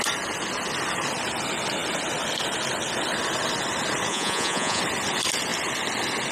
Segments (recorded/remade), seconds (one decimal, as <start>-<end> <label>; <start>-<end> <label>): 0.0-4.1 recorded; 4.1-4.8 remade; 4.8-6.3 recorded